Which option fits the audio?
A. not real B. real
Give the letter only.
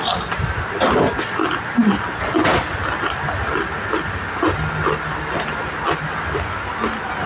B